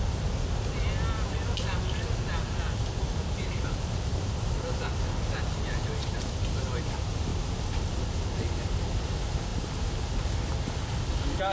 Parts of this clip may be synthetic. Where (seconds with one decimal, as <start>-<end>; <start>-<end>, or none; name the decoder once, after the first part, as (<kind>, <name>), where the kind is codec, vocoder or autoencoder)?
none